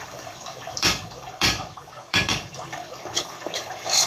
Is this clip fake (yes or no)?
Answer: yes